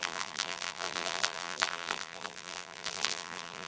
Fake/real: fake